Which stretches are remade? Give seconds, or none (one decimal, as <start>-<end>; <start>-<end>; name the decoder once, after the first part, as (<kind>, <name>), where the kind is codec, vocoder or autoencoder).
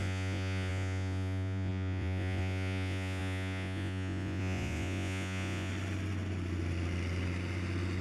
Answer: 0.0-5.7 (vocoder, Vocos)